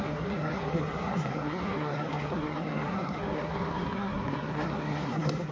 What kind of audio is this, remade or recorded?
remade